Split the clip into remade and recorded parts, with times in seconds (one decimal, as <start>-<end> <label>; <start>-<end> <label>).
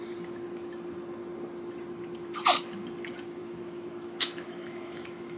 0.0-3.4 recorded; 3.4-5.4 remade